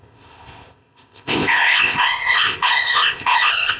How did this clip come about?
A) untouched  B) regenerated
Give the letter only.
B